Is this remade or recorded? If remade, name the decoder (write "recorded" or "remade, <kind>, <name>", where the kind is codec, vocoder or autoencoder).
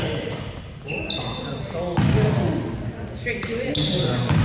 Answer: recorded